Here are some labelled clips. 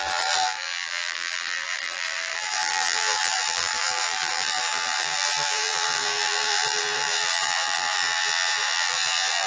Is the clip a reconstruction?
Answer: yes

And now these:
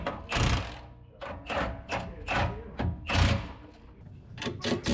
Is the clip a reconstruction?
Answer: no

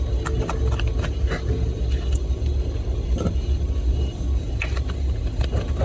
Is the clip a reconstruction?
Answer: no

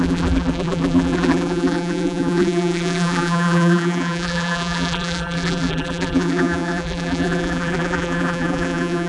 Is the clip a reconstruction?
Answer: yes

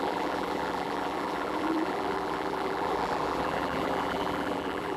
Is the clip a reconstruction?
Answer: yes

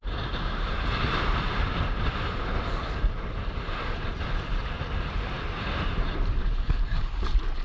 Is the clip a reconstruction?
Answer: yes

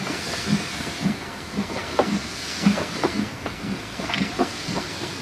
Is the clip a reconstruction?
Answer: yes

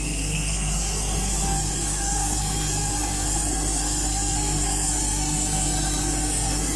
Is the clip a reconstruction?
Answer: yes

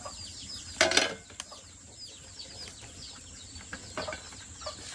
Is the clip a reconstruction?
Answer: no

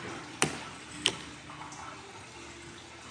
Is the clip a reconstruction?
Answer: no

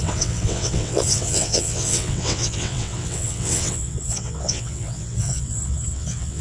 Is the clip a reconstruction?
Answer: yes